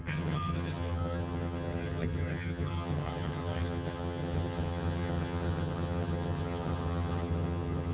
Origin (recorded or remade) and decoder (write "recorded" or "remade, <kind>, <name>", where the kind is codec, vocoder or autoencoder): remade, vocoder, HiFi-GAN